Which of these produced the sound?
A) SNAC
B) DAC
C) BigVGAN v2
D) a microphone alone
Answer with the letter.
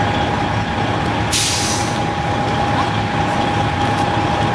D